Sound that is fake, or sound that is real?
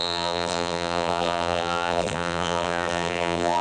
fake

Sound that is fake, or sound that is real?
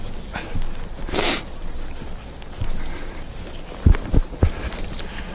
real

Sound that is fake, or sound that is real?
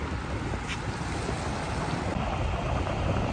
real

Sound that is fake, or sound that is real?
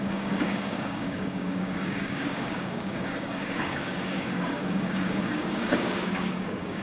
fake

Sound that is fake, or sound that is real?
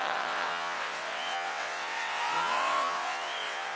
fake